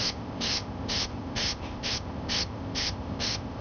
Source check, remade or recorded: remade